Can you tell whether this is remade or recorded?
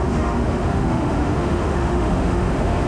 remade